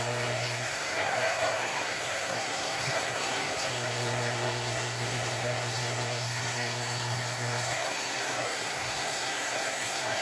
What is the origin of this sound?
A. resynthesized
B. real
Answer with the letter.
A